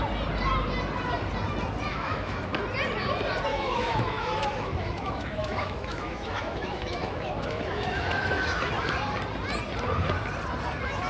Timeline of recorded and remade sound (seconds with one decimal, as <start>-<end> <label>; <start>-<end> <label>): 0.0-1.9 recorded; 1.9-2.6 remade; 2.6-3.5 recorded; 3.5-8.6 remade; 8.6-11.1 recorded